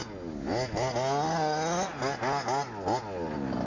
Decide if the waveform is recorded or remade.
recorded